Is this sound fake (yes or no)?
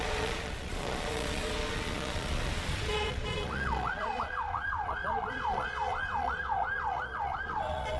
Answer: yes